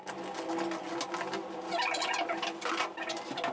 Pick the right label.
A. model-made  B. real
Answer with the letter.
B